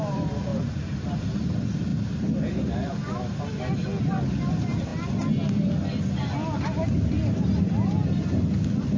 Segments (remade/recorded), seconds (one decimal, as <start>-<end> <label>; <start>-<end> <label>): 0.0-0.5 recorded; 0.5-1.2 remade; 1.2-9.0 recorded